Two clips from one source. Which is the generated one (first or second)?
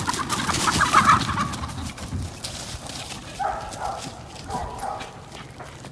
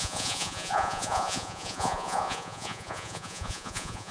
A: second